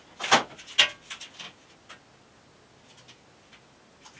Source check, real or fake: real